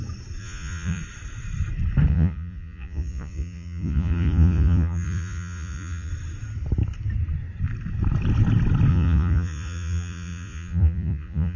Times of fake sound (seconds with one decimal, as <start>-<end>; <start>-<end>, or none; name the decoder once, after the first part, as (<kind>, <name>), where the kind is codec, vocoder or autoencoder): 0.4-1.0 (vocoder, Vocos); 2.1-6.1; 8.9-11.6